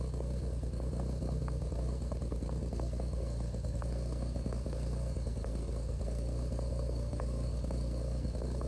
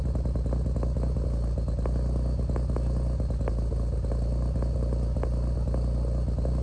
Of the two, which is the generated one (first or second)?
first